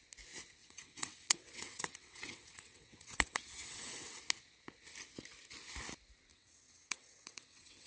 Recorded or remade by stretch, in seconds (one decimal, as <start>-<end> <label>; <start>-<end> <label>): 0.0-0.6 recorded; 0.6-4.2 remade; 4.2-6.3 recorded; 6.3-7.9 remade